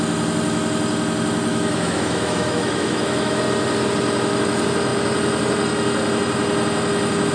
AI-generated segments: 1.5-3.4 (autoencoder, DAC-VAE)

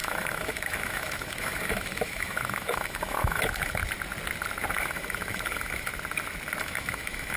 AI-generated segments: 0.0-3.8 (autoencoder, DAC-VAE); 4.8-5.9; 6.6-7.4

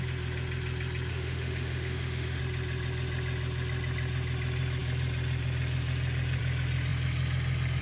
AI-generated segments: 1.1-2.4 (autoencoder, DAC-VAE)

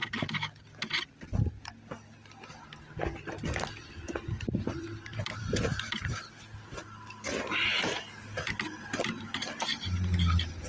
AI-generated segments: none